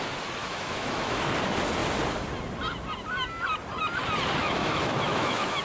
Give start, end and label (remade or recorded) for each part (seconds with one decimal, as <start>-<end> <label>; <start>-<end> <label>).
0.0-0.4 recorded; 0.4-1.2 remade; 1.2-4.4 recorded; 4.4-5.6 remade